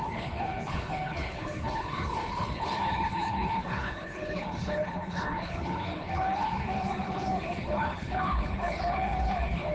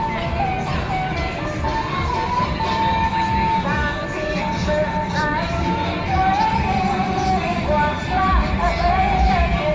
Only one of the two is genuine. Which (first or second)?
second